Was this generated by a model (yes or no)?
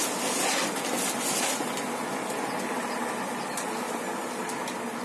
no